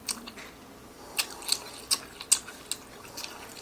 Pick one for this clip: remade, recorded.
recorded